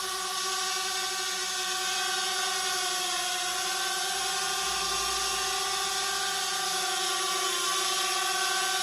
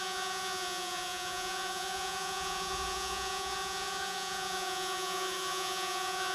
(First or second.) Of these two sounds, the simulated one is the second